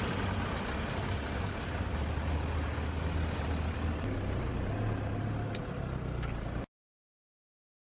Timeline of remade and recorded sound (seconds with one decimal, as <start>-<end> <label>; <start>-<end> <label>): 0.0-7.9 recorded